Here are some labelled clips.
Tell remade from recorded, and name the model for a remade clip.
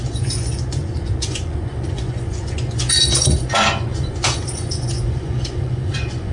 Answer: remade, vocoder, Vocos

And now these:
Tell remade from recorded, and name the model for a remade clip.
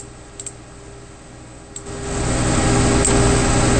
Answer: recorded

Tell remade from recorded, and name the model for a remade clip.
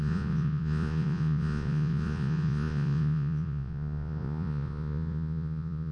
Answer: remade, vocoder, Vocos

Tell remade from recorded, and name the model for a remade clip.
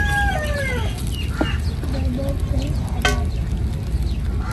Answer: recorded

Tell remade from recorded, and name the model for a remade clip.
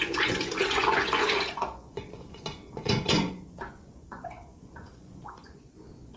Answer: remade, vocoder, Vocos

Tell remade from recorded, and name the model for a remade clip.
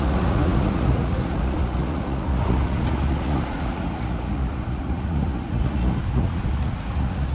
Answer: remade, vocoder, Vocos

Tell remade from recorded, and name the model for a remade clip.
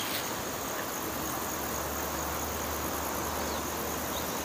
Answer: recorded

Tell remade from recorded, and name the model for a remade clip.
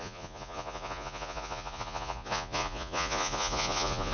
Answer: remade, vocoder, Vocos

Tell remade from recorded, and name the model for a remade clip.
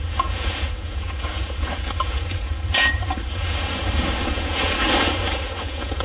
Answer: remade, vocoder, Vocos